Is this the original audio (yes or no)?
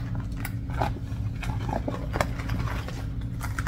yes